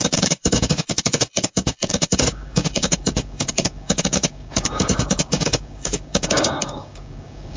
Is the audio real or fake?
fake